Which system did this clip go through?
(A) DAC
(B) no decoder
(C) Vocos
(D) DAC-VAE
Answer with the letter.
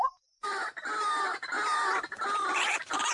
B